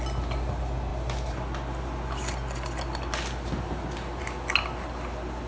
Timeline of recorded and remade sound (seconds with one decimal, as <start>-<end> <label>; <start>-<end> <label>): 0.0-5.5 recorded